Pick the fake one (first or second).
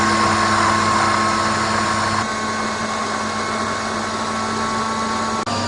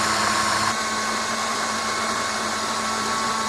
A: second